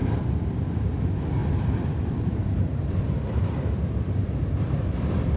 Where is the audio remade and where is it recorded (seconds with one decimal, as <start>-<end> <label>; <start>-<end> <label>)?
0.0-5.4 recorded

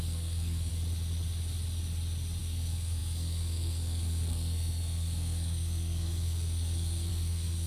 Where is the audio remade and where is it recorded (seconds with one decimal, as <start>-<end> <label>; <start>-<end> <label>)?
0.0-0.7 remade; 0.7-2.4 recorded; 2.4-7.7 remade